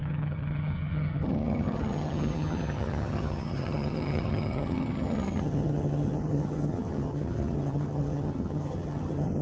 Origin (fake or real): fake